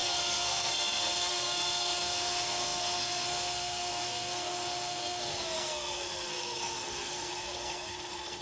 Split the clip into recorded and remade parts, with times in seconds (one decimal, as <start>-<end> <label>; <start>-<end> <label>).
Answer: 0.0-8.4 remade